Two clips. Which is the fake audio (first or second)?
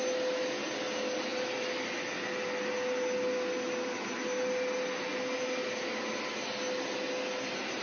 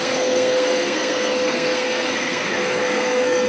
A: second